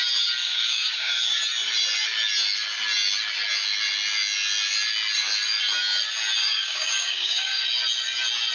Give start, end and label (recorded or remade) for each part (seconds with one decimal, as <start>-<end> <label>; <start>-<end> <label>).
0.0-0.4 recorded; 0.4-1.4 remade; 1.4-6.4 recorded; 6.4-7.6 remade; 7.6-8.5 recorded